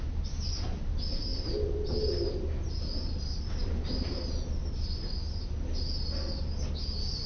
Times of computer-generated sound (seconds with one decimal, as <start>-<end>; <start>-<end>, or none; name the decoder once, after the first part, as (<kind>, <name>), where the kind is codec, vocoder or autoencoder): none